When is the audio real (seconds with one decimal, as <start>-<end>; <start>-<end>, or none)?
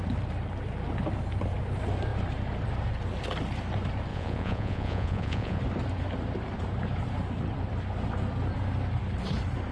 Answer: 0.0-4.1; 5.6-9.7